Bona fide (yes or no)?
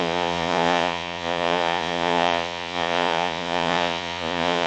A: no